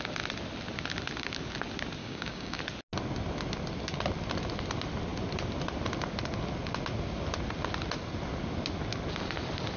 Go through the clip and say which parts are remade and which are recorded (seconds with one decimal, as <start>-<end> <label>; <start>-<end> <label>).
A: 0.0-2.0 recorded; 2.0-2.6 remade; 2.6-9.8 recorded

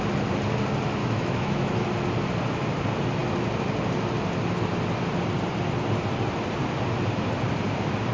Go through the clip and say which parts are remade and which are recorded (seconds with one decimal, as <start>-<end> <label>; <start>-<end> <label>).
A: 0.0-1.0 recorded; 1.0-1.9 remade; 1.9-8.1 recorded

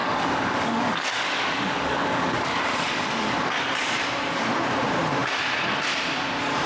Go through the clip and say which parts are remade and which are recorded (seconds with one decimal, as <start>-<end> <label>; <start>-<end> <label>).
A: 0.0-3.5 remade; 3.5-6.7 recorded